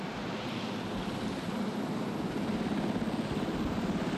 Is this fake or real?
real